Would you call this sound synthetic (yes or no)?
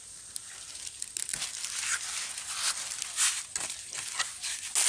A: no